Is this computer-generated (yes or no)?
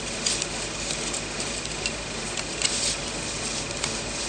no